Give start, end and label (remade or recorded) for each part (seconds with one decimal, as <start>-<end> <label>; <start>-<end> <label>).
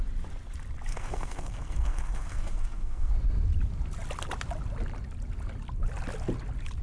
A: 0.0-0.9 recorded; 0.9-3.1 remade; 3.1-6.8 recorded